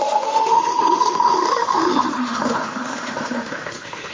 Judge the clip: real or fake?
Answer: fake